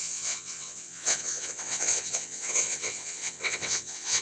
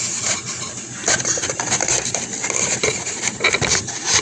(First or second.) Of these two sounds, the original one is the second